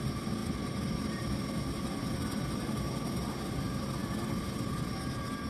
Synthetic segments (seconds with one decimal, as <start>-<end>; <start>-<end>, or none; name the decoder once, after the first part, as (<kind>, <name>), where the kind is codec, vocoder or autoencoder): none